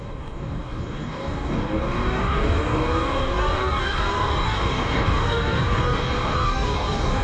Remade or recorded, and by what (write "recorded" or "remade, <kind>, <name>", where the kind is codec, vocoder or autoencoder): remade, codec, DAC